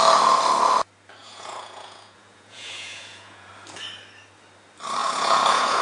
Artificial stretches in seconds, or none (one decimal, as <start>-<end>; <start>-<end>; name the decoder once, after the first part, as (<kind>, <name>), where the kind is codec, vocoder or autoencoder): 1.2-3.5 (vocoder, Vocos); 5.0-5.8